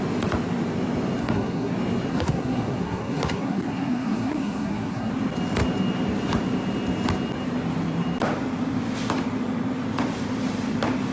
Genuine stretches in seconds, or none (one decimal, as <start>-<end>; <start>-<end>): 0.0-1.2; 1.7-2.1; 5.1-11.1